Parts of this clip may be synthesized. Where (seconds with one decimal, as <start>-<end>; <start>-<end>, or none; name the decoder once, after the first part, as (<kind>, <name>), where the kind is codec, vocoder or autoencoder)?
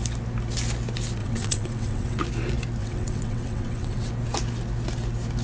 1.2-2.2 (vocoder, WaveNeXt); 2.8-4.1